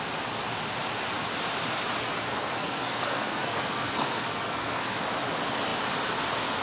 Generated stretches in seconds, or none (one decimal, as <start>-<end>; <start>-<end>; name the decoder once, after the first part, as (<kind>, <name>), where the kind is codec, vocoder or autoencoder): 2.3-5.0 (codec, SNAC)